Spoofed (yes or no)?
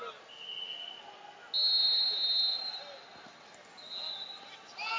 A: no